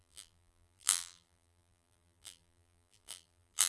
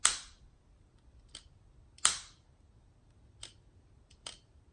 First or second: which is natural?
second